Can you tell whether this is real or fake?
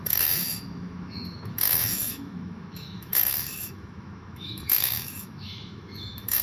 fake